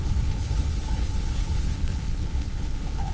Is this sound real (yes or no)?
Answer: no